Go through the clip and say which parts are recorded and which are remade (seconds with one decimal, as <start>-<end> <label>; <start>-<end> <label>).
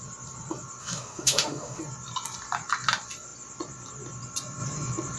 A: 0.0-0.8 recorded; 0.8-1.8 remade; 1.8-5.2 recorded